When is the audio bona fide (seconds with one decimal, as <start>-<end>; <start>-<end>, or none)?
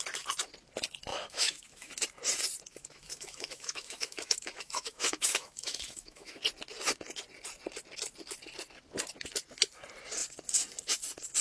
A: 0.0-1.1; 1.9-2.7; 6.4-11.4